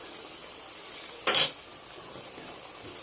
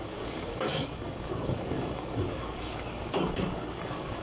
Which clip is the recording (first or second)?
first